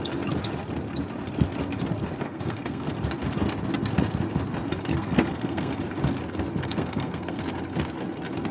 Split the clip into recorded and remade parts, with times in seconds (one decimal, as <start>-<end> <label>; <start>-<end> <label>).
0.0-2.2 recorded; 2.2-2.9 remade; 2.9-4.9 recorded; 4.9-5.7 remade; 5.7-6.6 recorded; 6.6-7.4 remade; 7.4-8.5 recorded